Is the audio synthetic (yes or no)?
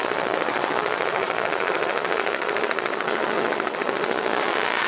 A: yes